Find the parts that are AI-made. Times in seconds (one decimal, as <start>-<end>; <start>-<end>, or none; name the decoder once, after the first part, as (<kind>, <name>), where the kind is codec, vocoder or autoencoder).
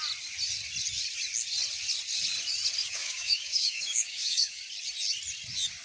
2.8-4.6 (codec, DAC)